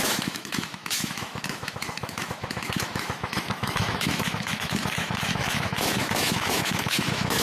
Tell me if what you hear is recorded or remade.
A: remade